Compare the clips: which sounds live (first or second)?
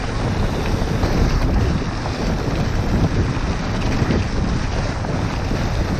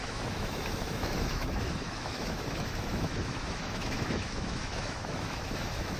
first